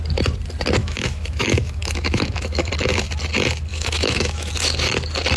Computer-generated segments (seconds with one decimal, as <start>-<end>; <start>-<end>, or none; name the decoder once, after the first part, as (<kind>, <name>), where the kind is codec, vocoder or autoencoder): 0.8-2.7 (autoencoder, DAC-VAE); 3.7-4.5